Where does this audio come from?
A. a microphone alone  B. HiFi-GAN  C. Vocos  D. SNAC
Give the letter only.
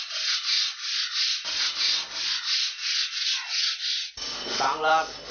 A